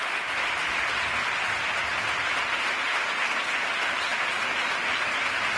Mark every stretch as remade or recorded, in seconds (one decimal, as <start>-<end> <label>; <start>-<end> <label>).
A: 0.0-5.6 recorded